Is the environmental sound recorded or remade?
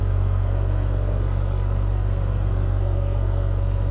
remade